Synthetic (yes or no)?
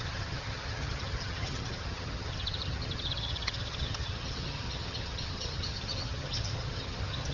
yes